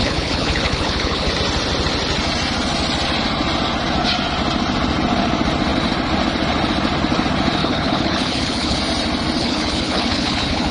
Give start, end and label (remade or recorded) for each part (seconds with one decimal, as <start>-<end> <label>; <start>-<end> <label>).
0.0-1.3 remade; 1.3-7.6 recorded; 7.6-8.8 remade; 8.8-9.4 recorded; 9.4-10.7 remade